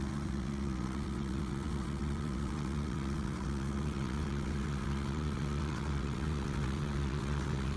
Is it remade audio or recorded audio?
remade